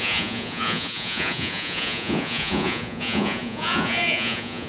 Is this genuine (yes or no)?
no